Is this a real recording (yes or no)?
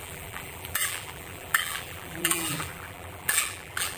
no